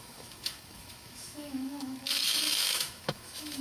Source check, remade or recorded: remade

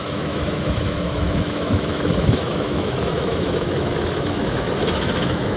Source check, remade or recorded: remade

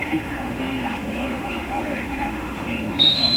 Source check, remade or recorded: remade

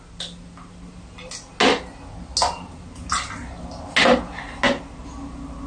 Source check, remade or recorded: recorded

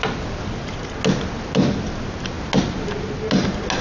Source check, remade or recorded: recorded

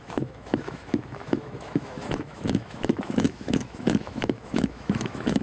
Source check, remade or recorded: remade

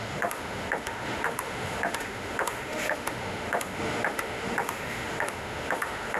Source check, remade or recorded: remade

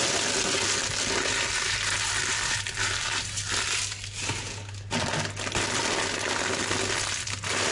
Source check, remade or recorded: recorded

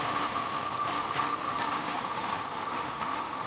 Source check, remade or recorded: remade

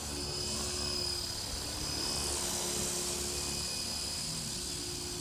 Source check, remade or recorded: recorded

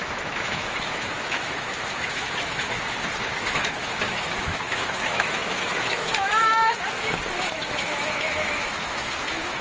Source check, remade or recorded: remade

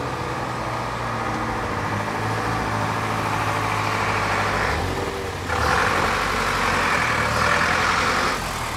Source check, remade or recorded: recorded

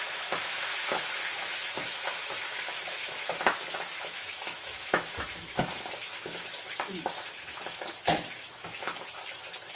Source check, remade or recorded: remade